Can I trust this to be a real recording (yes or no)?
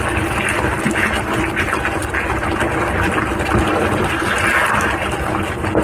yes